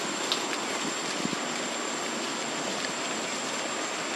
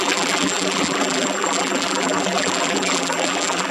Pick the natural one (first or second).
first